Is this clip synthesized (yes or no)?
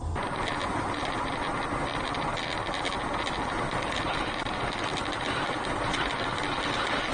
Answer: no